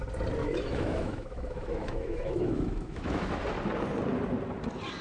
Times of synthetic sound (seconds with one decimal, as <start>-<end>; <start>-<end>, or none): 0.4-3.4